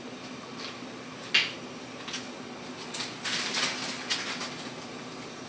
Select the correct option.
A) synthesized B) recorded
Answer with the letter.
B